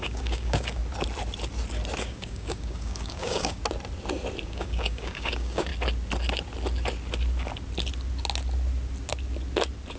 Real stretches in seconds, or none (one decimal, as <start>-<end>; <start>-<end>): 0.8-2.0; 3.6-4.4; 5.7-10.0